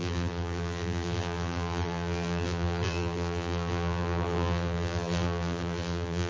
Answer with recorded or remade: remade